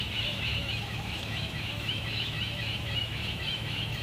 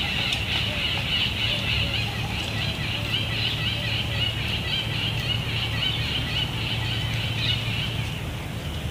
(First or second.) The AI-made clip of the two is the first